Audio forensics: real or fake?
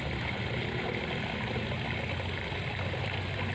real